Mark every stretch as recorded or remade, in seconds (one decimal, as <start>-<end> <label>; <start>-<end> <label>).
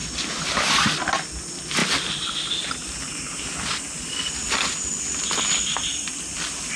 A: 0.0-6.8 recorded